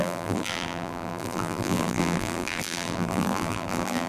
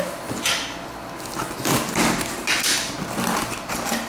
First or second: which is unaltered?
second